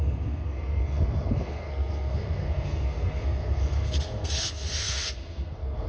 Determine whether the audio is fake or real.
fake